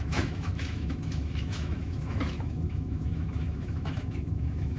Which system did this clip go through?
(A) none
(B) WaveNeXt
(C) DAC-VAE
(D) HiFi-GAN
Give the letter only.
C